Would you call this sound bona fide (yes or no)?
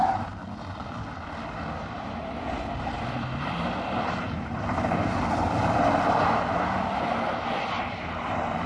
no